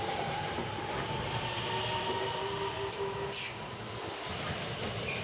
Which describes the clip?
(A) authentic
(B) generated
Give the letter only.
A